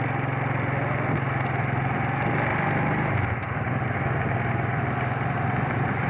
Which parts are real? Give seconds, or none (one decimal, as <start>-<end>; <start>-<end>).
0.0-2.5; 4.0-6.1